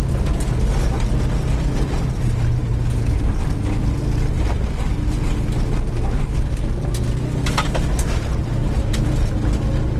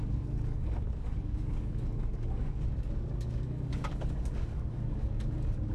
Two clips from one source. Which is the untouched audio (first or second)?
first